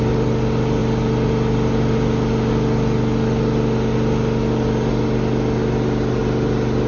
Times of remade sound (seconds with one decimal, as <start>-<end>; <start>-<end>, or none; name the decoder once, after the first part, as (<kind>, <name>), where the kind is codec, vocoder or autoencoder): none